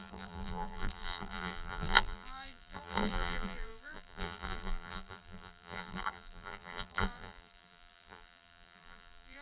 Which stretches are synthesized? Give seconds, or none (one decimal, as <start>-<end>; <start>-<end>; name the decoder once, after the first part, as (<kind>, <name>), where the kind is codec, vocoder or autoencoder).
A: 0.0-9.4 (vocoder, BigVGAN v2)